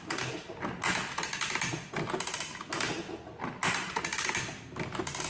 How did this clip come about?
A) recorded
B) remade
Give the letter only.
A